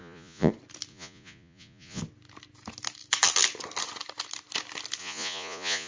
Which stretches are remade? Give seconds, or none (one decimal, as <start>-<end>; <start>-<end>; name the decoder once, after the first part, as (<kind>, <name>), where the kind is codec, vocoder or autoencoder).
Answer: 0.0-0.5 (vocoder, Vocos); 0.9-2.0; 5.0-5.9